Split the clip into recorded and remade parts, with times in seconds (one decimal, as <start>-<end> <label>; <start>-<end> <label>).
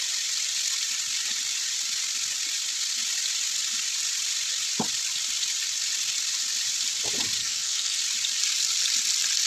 0.0-7.4 recorded; 7.4-8.0 remade; 8.0-9.5 recorded